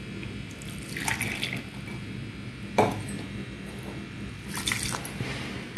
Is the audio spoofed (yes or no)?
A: no